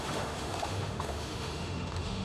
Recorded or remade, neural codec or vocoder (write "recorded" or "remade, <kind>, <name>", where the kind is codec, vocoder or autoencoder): remade, autoencoder, DAC-VAE